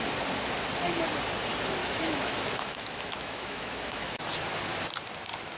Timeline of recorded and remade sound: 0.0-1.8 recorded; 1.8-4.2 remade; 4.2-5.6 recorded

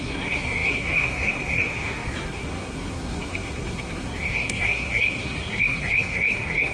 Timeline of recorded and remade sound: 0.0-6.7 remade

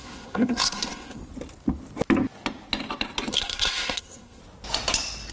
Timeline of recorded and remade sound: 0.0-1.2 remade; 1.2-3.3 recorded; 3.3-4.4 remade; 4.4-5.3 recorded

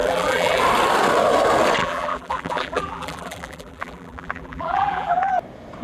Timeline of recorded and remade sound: 0.0-0.6 remade; 0.6-1.8 recorded; 1.8-5.3 remade; 5.3-5.8 recorded

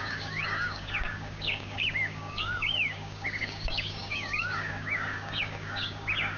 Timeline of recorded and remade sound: 0.0-6.4 remade

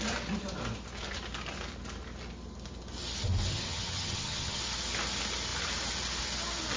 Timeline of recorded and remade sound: 0.0-3.5 recorded; 3.5-4.6 remade; 4.6-6.8 recorded